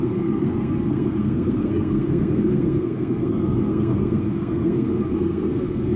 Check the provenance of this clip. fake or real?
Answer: fake